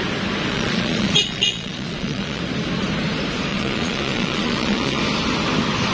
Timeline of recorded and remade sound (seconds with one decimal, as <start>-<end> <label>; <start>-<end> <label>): 0.0-0.5 recorded; 0.5-2.4 remade; 2.4-3.5 recorded; 3.5-5.0 remade; 5.0-5.9 recorded